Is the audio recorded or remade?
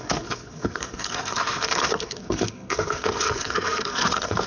remade